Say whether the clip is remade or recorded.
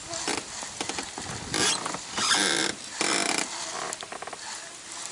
recorded